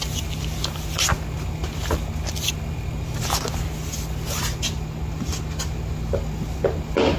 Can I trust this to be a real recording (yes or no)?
yes